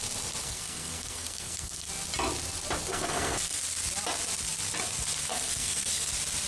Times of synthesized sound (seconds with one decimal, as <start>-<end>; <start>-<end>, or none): 0.4-1.9; 2.9-3.6; 5.3-6.1

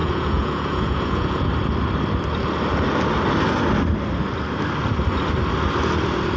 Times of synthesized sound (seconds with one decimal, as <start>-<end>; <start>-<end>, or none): 0.0-1.5

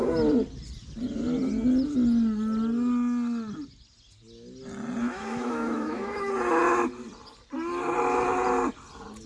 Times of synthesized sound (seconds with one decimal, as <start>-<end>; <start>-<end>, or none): 5.0-6.3